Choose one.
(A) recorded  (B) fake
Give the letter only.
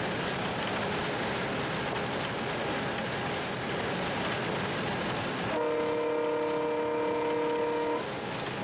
A